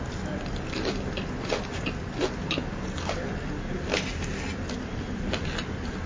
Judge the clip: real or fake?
real